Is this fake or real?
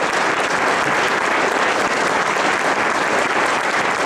real